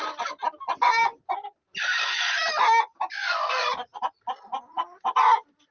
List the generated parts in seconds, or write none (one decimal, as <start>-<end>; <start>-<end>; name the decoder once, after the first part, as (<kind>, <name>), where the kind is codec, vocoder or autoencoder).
3.9-5.7 (vocoder, BigVGAN v2)